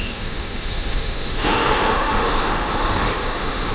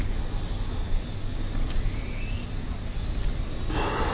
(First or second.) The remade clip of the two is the first